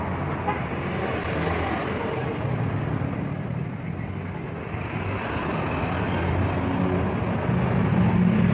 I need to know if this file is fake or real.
real